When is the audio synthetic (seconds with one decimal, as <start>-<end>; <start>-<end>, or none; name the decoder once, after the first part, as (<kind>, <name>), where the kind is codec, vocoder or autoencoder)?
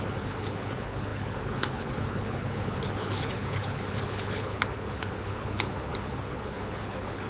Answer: 0.0-7.3 (codec, HILCodec)